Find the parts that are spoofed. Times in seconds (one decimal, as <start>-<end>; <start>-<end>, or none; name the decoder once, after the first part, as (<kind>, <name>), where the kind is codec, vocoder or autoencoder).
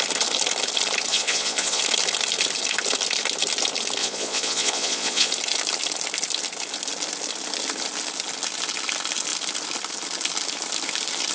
1.1-1.8 (vocoder, Vocos); 4.0-5.3